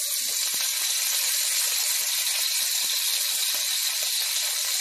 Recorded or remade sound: recorded